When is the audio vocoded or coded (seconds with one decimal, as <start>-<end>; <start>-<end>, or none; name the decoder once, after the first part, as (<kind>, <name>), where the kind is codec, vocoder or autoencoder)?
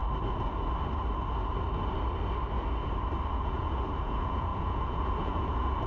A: 3.3-5.9 (vocoder, Vocos)